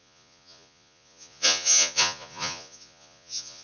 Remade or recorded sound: remade